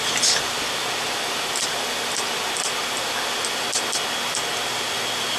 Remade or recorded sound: recorded